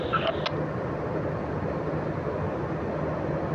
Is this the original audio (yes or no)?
yes